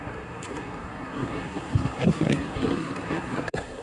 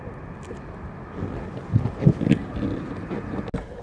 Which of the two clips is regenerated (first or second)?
first